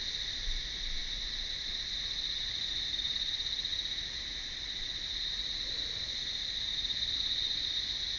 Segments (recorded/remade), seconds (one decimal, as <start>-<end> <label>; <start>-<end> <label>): 0.0-8.2 recorded

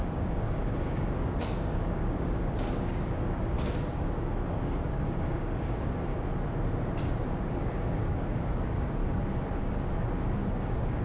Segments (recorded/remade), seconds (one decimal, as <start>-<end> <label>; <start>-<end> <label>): 0.0-6.1 remade; 6.1-7.5 recorded; 7.5-9.0 remade; 9.0-9.6 recorded; 9.6-11.0 remade

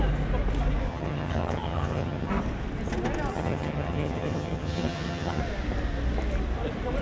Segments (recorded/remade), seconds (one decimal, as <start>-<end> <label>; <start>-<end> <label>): 0.0-0.9 recorded; 0.9-2.3 remade; 2.3-3.3 recorded; 3.3-5.4 remade; 5.4-7.0 recorded

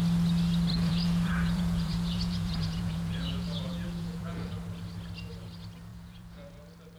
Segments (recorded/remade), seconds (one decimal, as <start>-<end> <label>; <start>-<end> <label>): 0.0-0.7 recorded; 0.7-4.5 remade; 4.5-5.9 recorded; 5.9-6.6 remade; 6.6-7.0 recorded

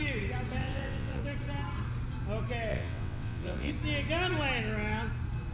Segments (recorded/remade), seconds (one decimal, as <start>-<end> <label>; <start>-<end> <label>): 0.0-0.6 recorded; 0.6-1.2 remade; 1.2-2.7 recorded; 2.7-3.7 remade; 3.7-5.5 recorded